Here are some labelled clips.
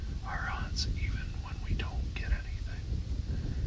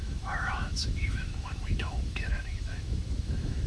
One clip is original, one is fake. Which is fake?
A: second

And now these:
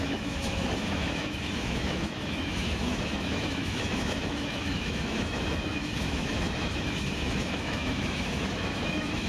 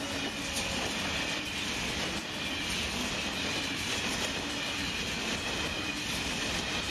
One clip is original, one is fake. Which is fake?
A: first